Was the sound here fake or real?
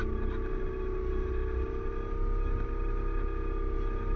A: real